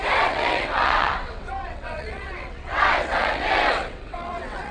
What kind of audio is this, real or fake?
fake